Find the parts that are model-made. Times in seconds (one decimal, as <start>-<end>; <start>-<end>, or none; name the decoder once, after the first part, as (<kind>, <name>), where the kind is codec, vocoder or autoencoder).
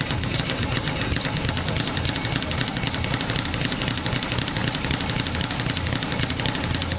none